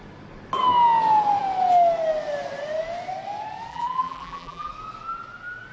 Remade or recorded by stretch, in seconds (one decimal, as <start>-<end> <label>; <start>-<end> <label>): 0.0-3.7 recorded; 3.7-4.7 remade; 4.7-5.7 recorded